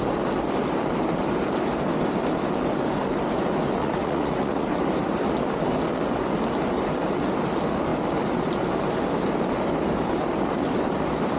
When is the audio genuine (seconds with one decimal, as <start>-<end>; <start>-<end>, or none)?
0.0-3.8; 4.7-11.4